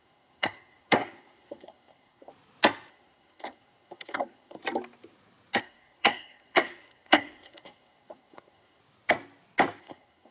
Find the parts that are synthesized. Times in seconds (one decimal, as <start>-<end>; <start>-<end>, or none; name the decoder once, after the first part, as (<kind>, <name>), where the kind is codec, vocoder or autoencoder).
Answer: 0.0-2.3 (codec, SNAC); 2.9-4.6; 5.6-8.8; 9.8-10.3